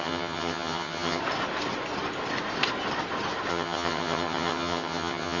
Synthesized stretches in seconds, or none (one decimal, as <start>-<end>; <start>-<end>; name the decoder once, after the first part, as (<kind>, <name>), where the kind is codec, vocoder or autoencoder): 0.0-1.2 (vocoder, HiFi-GAN); 3.5-5.4